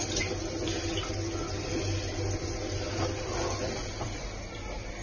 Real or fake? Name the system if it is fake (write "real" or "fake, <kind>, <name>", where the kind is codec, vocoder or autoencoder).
real